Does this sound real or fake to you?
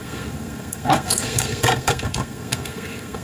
fake